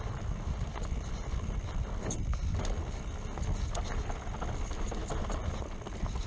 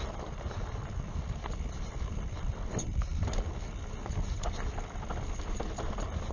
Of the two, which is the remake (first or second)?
second